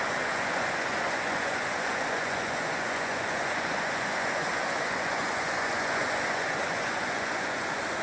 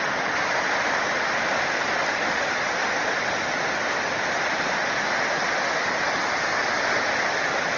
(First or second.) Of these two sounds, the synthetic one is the first